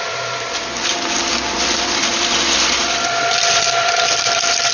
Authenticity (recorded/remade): remade